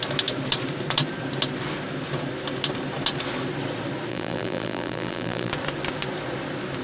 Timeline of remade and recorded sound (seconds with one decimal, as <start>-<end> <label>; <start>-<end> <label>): 0.0-4.1 recorded; 4.1-5.5 remade; 5.5-6.8 recorded